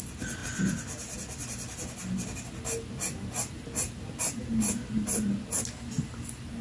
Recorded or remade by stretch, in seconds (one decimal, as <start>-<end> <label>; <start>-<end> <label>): 0.0-6.6 recorded